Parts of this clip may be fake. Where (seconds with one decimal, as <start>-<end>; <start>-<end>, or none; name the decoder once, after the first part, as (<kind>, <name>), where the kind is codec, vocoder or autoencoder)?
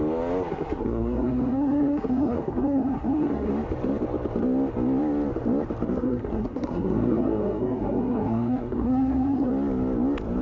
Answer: 0.5-3.5 (codec, SNAC); 6.0-9.5